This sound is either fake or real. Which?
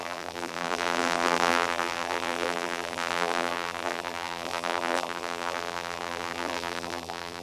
fake